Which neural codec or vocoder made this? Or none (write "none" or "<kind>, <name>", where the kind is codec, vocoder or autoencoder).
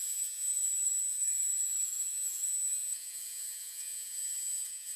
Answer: vocoder, Vocos